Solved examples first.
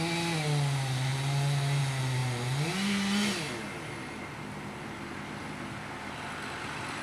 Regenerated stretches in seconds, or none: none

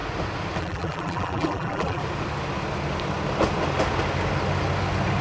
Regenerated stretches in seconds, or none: 0.6-2.0 (vocoder, BigVGAN v2)

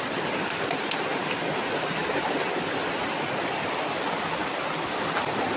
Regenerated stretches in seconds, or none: none

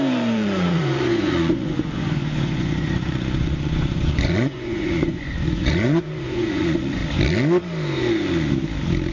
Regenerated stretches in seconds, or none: 0.0-7.0 (vocoder, Vocos)

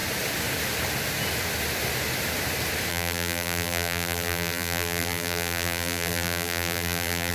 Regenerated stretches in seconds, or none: 2.9-7.3 (vocoder, BigVGAN v2)

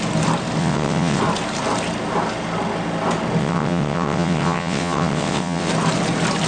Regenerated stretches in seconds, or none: 0.6-1.2 (vocoder, WaveNeXt); 3.4-5.7

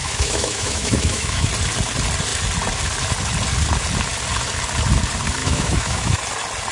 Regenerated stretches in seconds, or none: 0.0-1.5 (autoencoder, DAC-VAE); 5.4-6.2

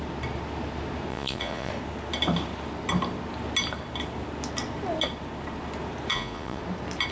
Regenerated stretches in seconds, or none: 1.1-1.7 (vocoder, Vocos); 6.1-6.6